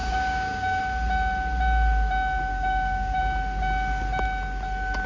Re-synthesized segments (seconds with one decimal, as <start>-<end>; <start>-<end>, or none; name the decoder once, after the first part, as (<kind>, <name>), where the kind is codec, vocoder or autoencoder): 0.0-0.8 (codec, DAC); 2.5-3.2